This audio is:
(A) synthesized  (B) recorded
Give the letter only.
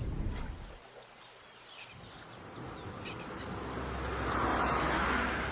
B